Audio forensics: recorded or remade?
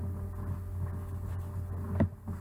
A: recorded